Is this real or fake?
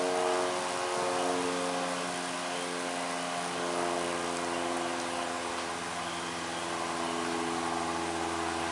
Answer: real